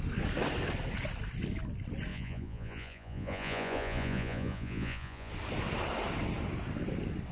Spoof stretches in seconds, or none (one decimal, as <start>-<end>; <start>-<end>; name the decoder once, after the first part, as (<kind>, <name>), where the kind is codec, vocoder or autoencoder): 2.1-5.3 (vocoder, Vocos)